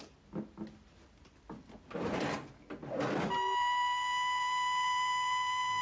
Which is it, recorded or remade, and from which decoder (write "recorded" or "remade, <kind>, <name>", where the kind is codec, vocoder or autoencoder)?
recorded